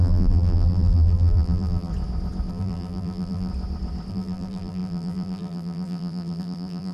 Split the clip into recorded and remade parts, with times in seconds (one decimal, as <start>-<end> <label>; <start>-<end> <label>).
0.0-1.9 remade; 1.9-2.5 recorded; 2.5-3.5 remade; 3.5-4.1 recorded; 4.1-6.9 remade